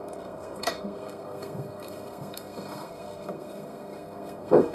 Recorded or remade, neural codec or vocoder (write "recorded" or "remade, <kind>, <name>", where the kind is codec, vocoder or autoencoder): remade, codec, SNAC